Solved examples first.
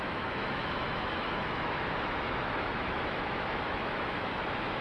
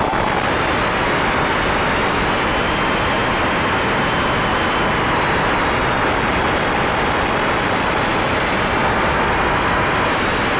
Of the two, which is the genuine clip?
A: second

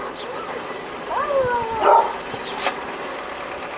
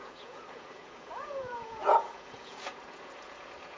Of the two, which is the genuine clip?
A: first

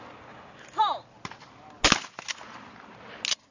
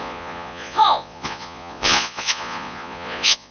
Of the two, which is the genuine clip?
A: first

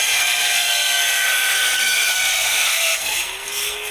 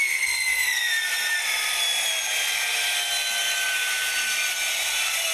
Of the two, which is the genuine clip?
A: second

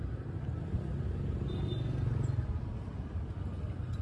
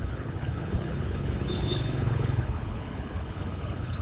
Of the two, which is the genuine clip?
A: first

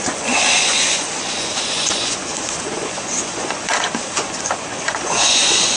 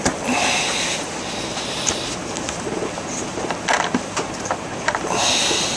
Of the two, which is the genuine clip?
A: second